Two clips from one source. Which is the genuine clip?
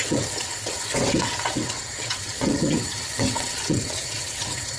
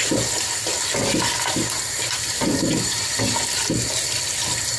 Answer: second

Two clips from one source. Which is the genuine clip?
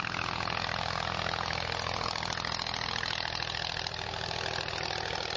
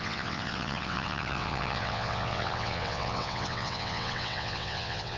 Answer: first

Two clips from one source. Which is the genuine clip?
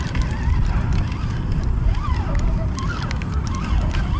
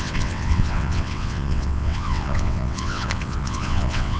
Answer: first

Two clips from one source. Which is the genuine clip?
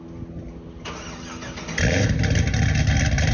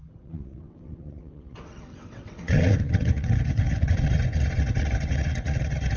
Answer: first